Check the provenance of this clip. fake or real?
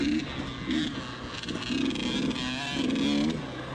real